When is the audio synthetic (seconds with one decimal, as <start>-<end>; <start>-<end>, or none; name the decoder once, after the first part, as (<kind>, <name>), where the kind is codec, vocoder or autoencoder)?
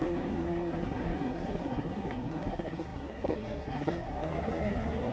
0.0-5.1 (codec, SNAC)